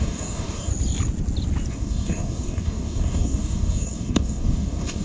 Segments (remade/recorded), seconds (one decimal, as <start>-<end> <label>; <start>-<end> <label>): 0.0-0.7 remade; 0.7-1.7 recorded; 1.7-5.0 remade